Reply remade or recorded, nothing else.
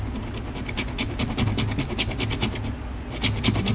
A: recorded